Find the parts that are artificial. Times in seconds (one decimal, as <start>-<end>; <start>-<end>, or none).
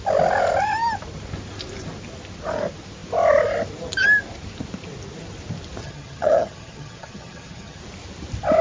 5.8-7.8